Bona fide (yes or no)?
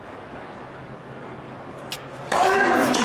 no